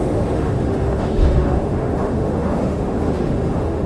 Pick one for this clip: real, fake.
fake